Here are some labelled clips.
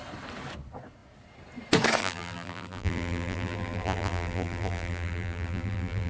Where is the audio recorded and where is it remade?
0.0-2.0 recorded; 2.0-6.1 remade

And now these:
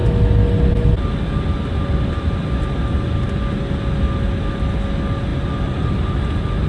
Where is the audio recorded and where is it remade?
0.0-6.7 recorded

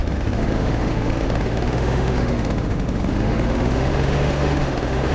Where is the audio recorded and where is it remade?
0.0-5.1 remade

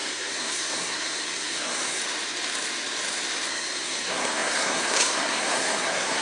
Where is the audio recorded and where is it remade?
0.0-2.0 remade; 2.0-3.5 recorded; 3.5-6.2 remade

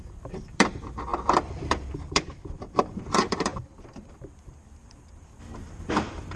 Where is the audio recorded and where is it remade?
0.0-3.5 remade; 3.5-4.1 recorded; 4.1-6.4 remade

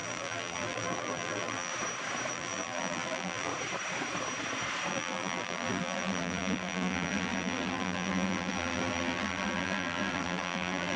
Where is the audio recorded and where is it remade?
0.0-1.7 remade; 1.7-2.3 recorded; 2.3-3.5 remade; 3.5-4.9 recorded; 4.9-11.0 remade

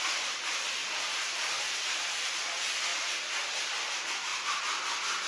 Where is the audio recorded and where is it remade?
0.0-0.8 recorded; 0.8-2.4 remade; 2.4-5.3 recorded